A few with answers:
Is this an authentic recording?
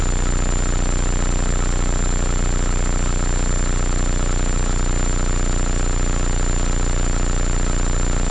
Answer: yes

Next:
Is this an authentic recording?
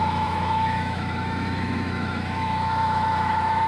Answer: no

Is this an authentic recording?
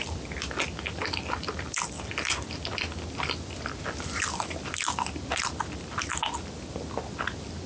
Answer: yes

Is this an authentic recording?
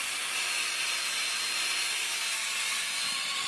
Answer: yes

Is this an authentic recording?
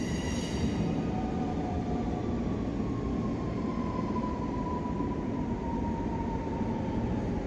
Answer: yes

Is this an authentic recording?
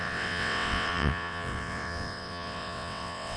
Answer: no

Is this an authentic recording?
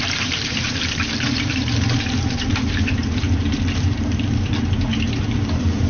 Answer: no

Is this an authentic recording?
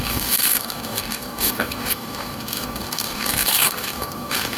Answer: no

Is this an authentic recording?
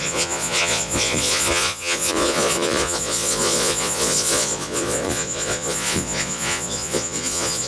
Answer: no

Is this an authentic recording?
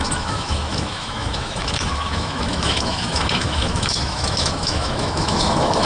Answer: no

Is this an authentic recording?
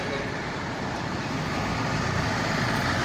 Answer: yes